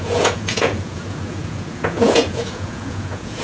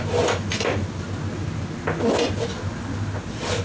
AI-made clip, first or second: first